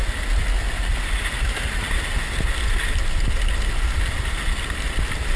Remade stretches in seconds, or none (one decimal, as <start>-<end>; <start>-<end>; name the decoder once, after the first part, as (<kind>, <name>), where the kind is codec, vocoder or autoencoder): none